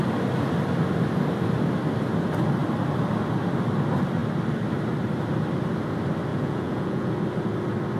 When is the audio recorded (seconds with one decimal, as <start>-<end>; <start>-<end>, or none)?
0.0-6.3; 7.1-8.0